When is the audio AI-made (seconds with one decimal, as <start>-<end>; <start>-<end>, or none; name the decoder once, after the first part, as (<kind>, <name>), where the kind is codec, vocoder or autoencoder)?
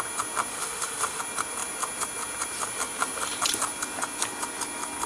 0.5-1.2 (autoencoder, DAC-VAE)